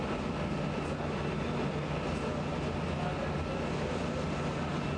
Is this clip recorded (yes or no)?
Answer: yes